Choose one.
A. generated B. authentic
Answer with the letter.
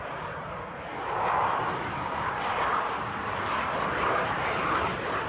B